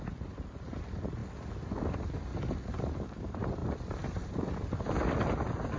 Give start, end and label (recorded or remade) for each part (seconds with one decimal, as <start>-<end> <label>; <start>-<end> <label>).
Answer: 0.0-1.2 remade; 1.2-1.9 recorded; 1.9-2.3 remade; 2.3-2.8 recorded; 2.8-5.8 remade